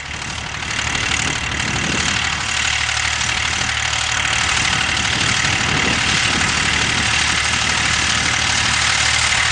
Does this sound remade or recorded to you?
recorded